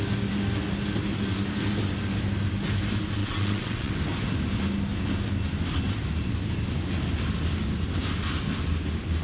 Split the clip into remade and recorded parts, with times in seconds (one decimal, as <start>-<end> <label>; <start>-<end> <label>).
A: 0.0-3.2 recorded; 3.2-3.9 remade; 3.9-9.2 recorded